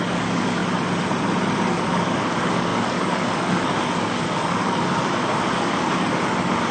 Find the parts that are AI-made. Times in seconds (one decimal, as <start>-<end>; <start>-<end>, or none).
0.0-0.6; 1.7-6.7

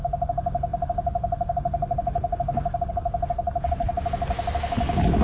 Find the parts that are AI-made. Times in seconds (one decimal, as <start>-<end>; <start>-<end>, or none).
0.7-2.9